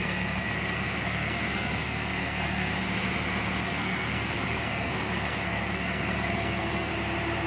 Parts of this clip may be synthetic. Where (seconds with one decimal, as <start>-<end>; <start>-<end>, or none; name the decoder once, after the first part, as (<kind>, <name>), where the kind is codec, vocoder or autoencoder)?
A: 0.0-2.7 (codec, SNAC); 3.6-6.9